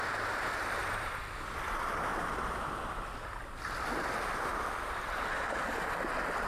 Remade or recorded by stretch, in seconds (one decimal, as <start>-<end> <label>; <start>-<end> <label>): 0.0-0.8 recorded; 0.8-1.7 remade; 1.7-2.1 recorded; 2.1-3.8 remade; 3.8-4.5 recorded; 4.5-5.2 remade; 5.2-6.5 recorded